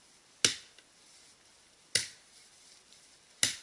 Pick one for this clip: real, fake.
real